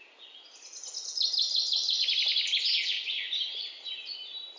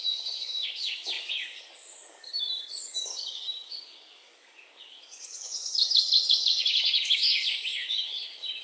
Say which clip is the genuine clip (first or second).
first